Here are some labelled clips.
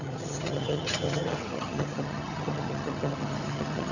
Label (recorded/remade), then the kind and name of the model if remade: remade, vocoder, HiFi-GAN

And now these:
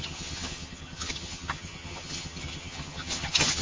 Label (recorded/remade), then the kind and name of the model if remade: remade, vocoder, HiFi-GAN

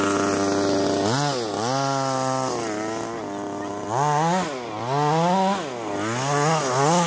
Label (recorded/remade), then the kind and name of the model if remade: recorded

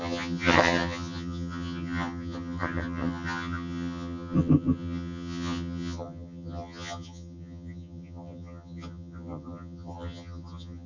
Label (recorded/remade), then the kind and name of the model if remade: remade, vocoder, HiFi-GAN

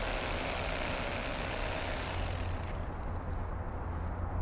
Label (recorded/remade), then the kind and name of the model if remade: recorded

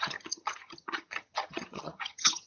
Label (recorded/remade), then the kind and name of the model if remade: remade, vocoder, HiFi-GAN